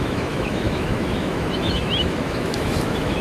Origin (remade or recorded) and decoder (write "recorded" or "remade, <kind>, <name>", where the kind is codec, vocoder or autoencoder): remade, autoencoder, DAC-VAE